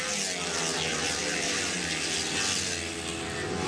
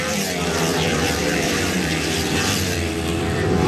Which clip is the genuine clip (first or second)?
first